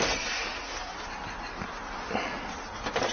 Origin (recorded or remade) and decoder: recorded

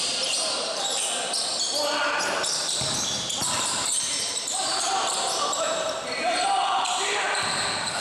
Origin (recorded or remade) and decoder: remade, vocoder, BigVGAN v2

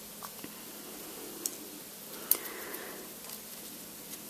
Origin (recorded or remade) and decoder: recorded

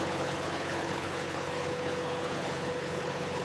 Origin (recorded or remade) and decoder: remade, codec, HILCodec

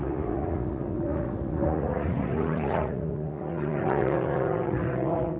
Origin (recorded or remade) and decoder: remade, vocoder, Vocos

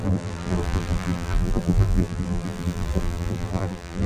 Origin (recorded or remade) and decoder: remade, vocoder, BigVGAN v2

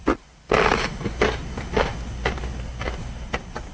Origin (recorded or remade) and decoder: recorded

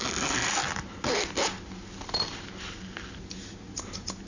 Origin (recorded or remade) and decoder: recorded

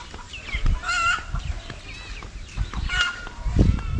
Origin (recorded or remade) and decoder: recorded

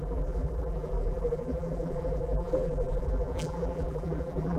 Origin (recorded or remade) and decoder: remade, vocoder, BigVGAN v2